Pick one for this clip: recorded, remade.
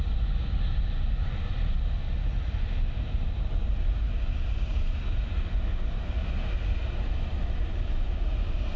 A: recorded